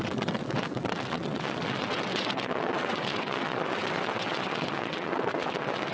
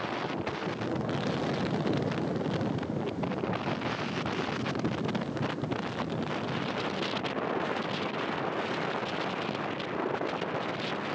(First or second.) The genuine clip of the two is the second